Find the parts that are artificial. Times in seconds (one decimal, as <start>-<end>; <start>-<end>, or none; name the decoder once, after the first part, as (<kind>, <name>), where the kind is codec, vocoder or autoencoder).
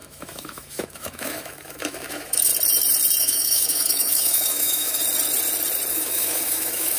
0.0-2.5 (autoencoder, DAC-VAE); 3.2-5.0; 5.9-7.0